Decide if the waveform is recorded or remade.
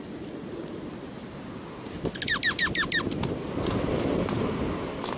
recorded